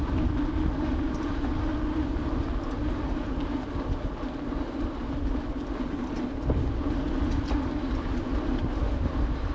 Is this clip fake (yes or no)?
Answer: no